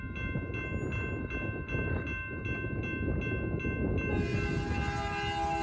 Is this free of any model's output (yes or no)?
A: yes